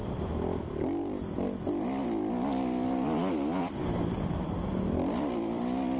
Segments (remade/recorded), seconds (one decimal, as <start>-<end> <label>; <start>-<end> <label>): 0.0-3.6 recorded; 3.6-6.0 remade